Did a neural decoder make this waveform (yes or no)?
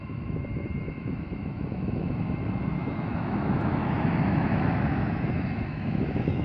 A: yes